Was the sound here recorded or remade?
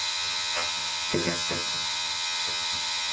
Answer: remade